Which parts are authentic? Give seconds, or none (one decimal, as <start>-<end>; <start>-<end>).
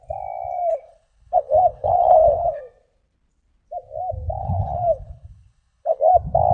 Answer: 0.0-0.7; 2.6-4.4; 6.0-6.5